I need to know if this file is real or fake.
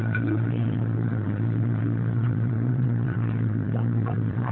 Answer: fake